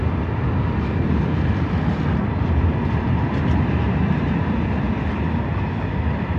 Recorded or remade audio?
recorded